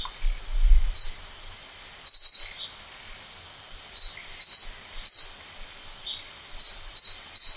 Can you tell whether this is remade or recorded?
recorded